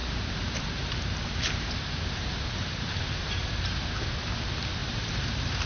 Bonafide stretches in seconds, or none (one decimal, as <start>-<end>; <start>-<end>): 3.4-4.8